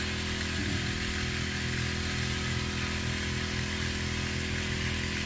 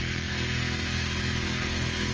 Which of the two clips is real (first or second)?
first